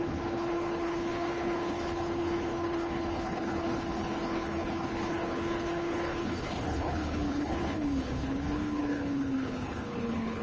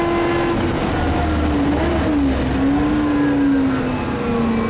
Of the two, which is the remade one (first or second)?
first